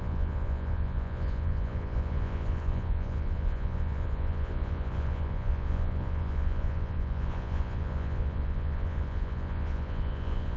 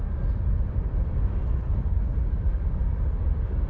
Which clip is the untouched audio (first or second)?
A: second